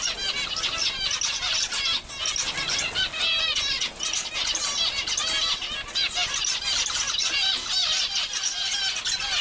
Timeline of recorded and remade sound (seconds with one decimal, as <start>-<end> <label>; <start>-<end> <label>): 0.0-9.4 recorded